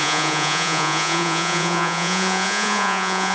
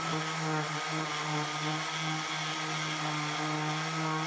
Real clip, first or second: second